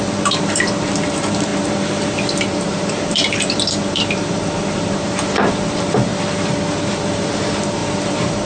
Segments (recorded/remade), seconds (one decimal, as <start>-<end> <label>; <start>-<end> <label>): 0.0-6.1 remade; 6.1-7.0 recorded; 7.0-8.5 remade